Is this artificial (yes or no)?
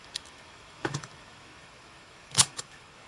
yes